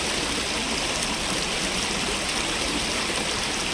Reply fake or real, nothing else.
real